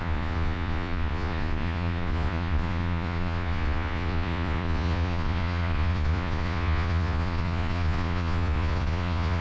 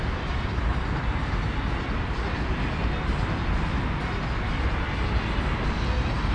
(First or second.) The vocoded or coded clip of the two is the first